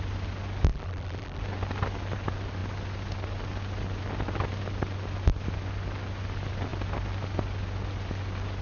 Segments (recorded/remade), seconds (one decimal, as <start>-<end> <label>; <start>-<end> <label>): 0.0-0.7 recorded; 0.7-1.4 remade; 1.4-8.6 recorded